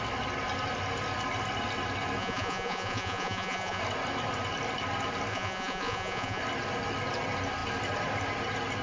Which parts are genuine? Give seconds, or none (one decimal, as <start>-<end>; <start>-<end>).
0.0-2.2; 3.8-5.3; 6.4-8.8